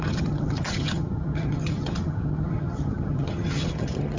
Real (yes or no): no